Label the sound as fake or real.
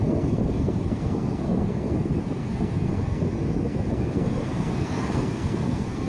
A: fake